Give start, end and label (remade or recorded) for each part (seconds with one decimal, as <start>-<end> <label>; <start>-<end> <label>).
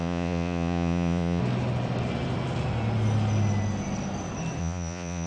0.0-1.4 remade; 1.4-4.6 recorded; 4.6-5.3 remade